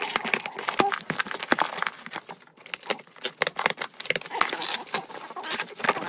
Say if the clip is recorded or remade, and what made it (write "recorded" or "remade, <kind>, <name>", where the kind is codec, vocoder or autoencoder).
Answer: recorded